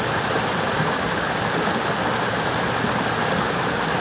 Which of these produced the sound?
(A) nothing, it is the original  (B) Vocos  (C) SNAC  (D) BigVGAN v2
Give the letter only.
A